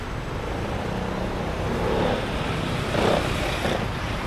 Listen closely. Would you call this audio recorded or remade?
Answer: recorded